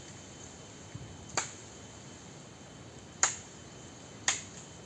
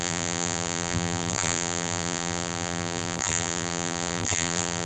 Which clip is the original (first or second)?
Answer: first